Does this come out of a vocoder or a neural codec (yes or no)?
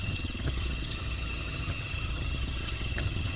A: yes